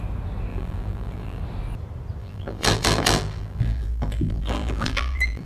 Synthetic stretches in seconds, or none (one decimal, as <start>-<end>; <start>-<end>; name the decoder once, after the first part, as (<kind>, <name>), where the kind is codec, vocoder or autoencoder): 0.5-1.4 (vocoder, BigVGAN v2); 2.2-5.5